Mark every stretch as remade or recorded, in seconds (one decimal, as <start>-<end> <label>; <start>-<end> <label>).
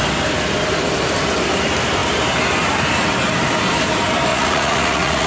0.0-4.3 recorded; 4.3-5.3 remade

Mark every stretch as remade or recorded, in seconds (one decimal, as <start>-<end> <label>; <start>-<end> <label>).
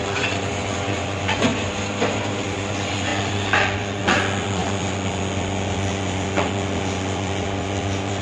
0.0-1.5 remade; 1.5-2.4 recorded; 2.4-8.2 remade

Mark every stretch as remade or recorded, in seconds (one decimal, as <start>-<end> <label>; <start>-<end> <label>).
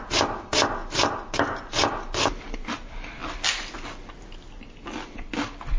0.0-5.8 recorded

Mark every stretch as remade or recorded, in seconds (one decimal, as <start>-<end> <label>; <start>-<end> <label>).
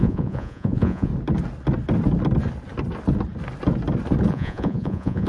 0.0-1.1 remade; 1.1-4.3 recorded; 4.3-5.3 remade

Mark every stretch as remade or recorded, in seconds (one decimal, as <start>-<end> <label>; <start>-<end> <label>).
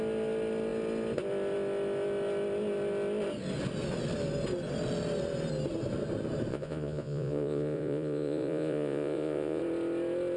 0.0-6.5 recorded; 6.5-9.6 remade; 9.6-10.4 recorded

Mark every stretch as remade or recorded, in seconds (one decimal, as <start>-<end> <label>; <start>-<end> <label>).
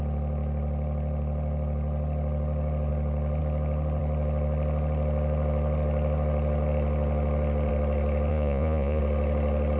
0.0-8.3 recorded; 8.3-9.0 remade; 9.0-9.8 recorded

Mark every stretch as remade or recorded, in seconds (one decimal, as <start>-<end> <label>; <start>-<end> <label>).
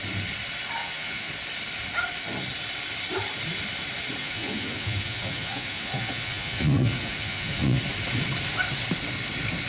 0.0-0.8 recorded; 0.8-1.3 remade; 1.3-4.2 recorded; 4.2-7.8 remade; 7.8-9.7 recorded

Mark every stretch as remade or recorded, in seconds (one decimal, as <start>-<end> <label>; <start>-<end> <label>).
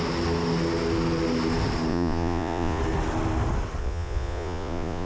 0.0-1.9 recorded; 1.9-2.8 remade; 2.8-3.8 recorded; 3.8-5.1 remade